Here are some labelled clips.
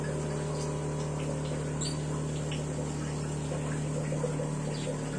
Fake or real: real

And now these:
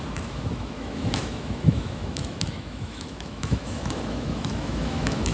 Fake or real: fake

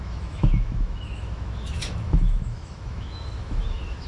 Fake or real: fake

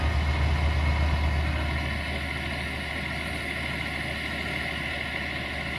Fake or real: real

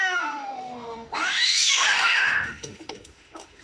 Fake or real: fake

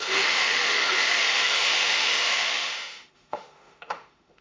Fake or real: fake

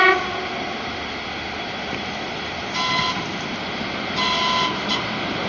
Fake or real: real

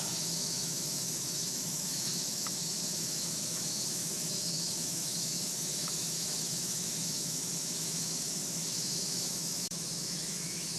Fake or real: fake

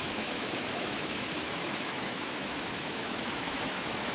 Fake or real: fake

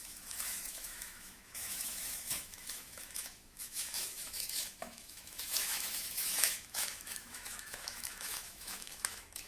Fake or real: fake